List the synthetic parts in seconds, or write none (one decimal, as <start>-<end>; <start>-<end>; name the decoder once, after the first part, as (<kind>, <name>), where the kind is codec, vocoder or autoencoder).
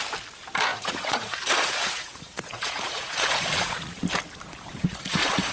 0.7-4.0 (vocoder, Vocos); 4.8-5.5